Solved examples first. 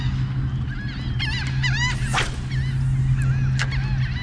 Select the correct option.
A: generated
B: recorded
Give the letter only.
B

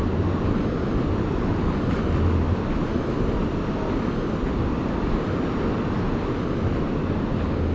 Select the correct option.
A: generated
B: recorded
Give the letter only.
B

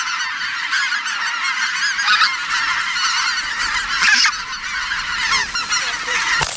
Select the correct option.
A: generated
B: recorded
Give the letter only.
B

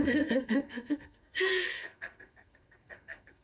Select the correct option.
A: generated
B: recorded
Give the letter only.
A